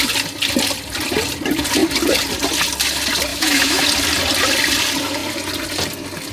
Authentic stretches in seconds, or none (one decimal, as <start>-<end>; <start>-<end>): 0.0-3.3; 3.8-6.3